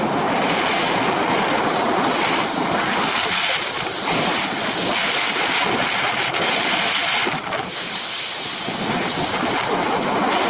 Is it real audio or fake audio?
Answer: real